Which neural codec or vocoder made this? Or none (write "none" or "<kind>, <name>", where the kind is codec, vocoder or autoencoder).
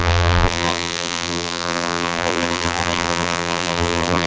vocoder, BigVGAN v2